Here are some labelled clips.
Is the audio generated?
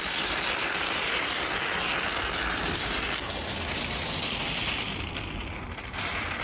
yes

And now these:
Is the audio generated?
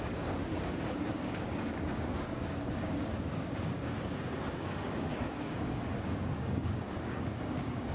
yes